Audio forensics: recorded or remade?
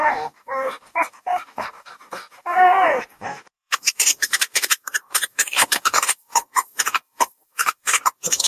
remade